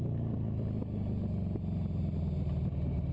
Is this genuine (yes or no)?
yes